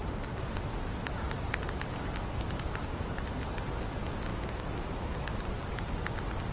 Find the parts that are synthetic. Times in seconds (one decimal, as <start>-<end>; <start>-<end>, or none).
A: 4.3-5.4